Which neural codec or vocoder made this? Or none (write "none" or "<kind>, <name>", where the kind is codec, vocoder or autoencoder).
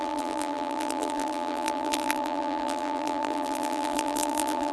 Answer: vocoder, BigVGAN v2